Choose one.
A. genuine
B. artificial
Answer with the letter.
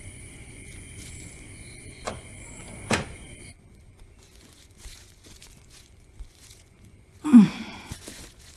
B